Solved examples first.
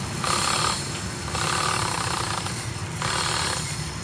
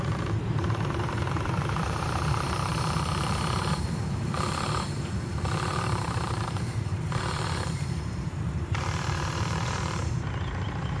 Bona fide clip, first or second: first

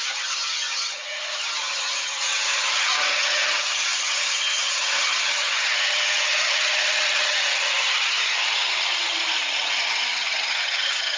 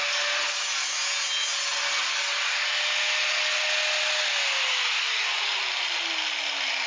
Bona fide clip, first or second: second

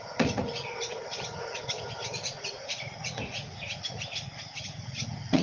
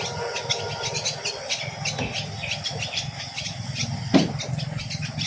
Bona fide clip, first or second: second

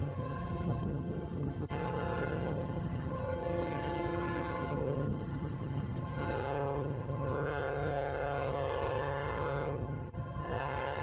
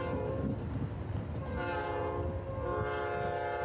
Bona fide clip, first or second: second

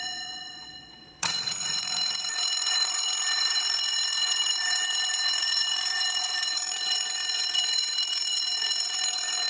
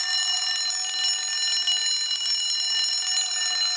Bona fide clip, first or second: second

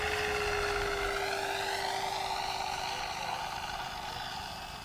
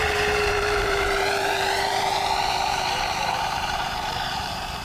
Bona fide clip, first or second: first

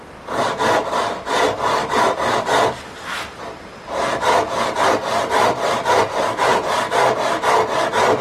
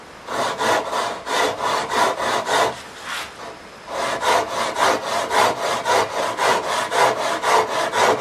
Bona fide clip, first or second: second